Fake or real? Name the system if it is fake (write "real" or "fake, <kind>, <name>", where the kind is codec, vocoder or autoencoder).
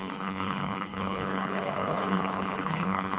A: fake, codec, HILCodec